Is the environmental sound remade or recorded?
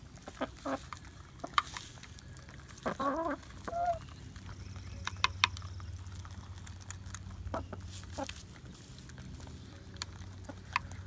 recorded